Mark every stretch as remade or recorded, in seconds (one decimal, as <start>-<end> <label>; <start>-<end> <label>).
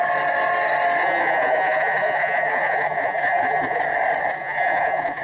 0.0-1.0 recorded; 1.0-3.8 remade; 3.8-4.3 recorded; 4.3-5.2 remade